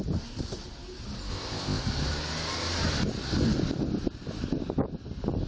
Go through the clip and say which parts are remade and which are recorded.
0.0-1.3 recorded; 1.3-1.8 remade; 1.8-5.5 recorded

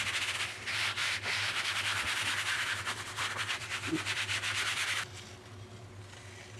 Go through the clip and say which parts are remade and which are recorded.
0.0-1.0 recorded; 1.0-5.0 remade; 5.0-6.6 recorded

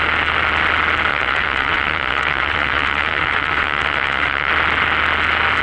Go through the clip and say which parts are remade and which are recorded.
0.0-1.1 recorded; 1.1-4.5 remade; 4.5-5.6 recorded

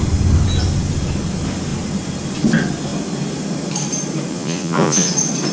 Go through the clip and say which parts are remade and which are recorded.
0.0-4.3 recorded; 4.3-5.1 remade; 5.1-5.5 recorded

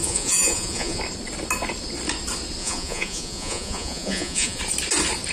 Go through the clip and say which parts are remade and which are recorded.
0.0-1.0 remade; 1.0-2.6 recorded; 2.6-4.6 remade; 4.6-5.3 recorded

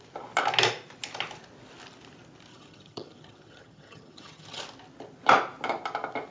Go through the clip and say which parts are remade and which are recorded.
0.0-2.5 recorded; 2.5-4.6 remade; 4.6-6.3 recorded